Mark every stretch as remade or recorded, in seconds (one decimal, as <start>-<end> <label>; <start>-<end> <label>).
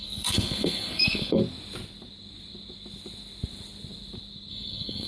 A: 0.0-1.4 remade; 1.4-4.5 recorded; 4.5-5.1 remade